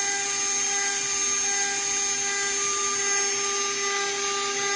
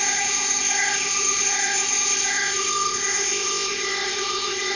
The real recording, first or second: first